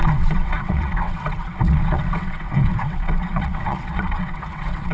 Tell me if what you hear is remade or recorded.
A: remade